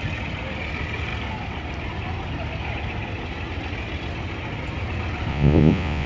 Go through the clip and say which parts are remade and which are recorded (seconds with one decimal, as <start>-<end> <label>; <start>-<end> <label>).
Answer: 0.0-5.3 recorded; 5.3-6.1 remade